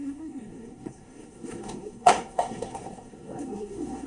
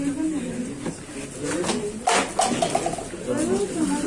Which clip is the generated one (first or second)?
first